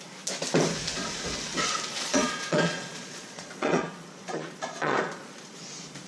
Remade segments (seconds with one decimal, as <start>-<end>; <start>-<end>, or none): 1.9-5.6